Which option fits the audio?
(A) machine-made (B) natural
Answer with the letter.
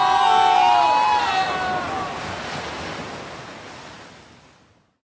B